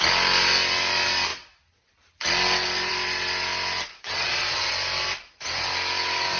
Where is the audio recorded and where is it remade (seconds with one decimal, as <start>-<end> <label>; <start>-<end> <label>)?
0.0-3.9 recorded; 3.9-4.7 remade; 4.7-6.4 recorded